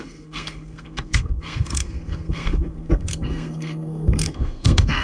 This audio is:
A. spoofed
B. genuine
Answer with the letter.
A